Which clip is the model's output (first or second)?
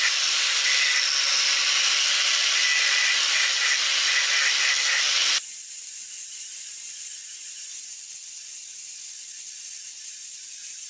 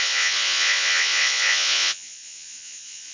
second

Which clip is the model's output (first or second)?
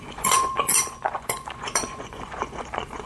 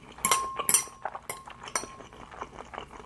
first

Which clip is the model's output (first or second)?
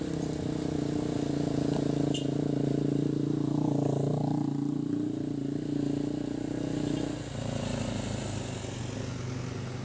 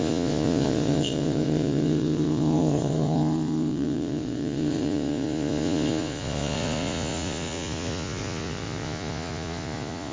second